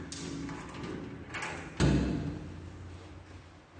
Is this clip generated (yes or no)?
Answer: no